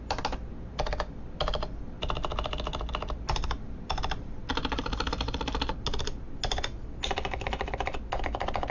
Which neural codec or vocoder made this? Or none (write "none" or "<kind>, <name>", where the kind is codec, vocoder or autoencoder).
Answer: none